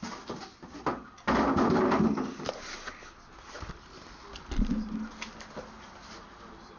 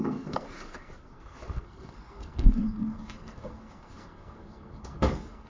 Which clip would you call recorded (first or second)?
first